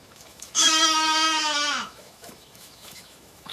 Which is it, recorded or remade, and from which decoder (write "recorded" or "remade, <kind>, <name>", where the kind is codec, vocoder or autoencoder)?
remade, autoencoder, DAC-VAE